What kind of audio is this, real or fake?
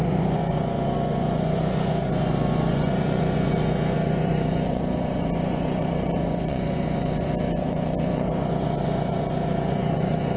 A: fake